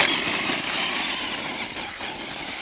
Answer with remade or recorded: recorded